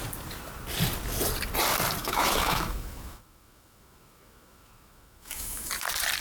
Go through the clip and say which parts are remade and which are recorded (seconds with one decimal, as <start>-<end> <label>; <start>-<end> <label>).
0.0-2.0 recorded; 2.0-5.7 remade; 5.7-6.2 recorded